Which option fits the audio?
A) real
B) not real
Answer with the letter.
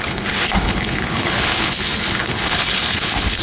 B